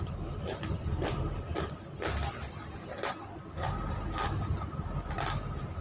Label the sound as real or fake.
real